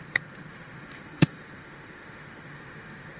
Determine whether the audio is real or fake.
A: fake